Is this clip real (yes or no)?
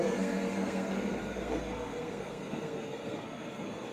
no